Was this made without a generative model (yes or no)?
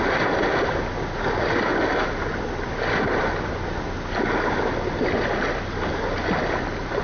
yes